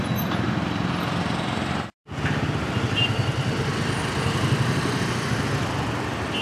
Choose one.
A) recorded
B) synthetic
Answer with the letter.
A